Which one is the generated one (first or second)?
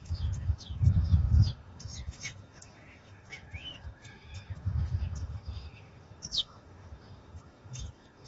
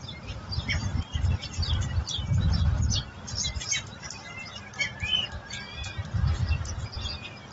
first